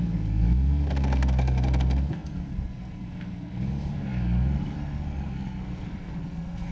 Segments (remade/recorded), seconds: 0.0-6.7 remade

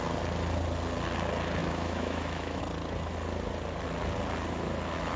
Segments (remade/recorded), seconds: 0.0-1.6 recorded; 1.6-2.6 remade; 2.6-5.2 recorded

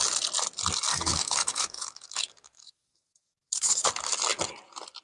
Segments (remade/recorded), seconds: 0.0-0.9 recorded; 0.9-3.9 remade; 3.9-5.0 recorded

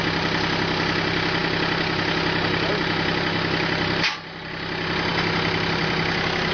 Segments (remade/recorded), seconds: 0.0-6.5 recorded